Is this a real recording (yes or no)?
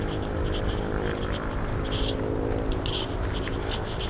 yes